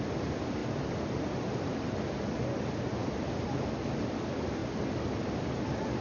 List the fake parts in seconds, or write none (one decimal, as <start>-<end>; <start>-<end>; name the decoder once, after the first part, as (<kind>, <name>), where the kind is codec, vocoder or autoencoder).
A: none

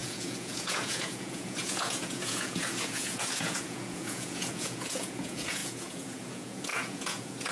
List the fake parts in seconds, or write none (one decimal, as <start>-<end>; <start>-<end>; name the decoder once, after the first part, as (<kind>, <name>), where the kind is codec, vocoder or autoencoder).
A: 0.0-7.5 (vocoder, Vocos)

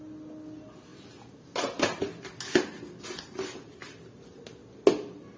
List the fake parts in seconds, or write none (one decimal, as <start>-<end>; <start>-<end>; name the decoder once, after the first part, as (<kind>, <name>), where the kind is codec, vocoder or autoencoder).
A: none

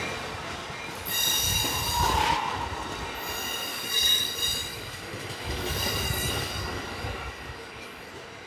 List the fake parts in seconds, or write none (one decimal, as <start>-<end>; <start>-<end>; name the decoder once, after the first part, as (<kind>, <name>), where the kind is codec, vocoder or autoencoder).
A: 3.7-4.3 (codec, DAC); 4.7-8.1

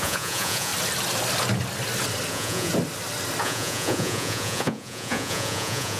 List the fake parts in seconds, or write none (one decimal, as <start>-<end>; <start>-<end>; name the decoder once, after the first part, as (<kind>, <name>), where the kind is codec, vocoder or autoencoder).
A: 0.0-0.7 (vocoder, Vocos); 2.3-2.7; 3.4-6.0